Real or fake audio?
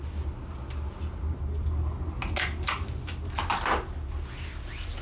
real